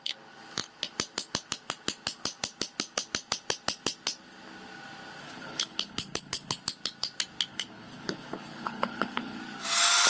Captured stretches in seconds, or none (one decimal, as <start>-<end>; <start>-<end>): 0.0-5.2; 6.6-7.5; 9.4-10.1